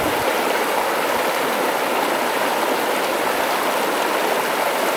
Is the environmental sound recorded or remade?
recorded